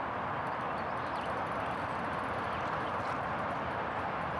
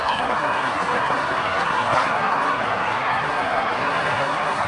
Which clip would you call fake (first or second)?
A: second